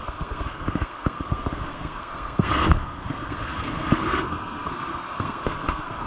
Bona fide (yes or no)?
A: no